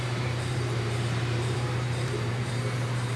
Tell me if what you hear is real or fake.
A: fake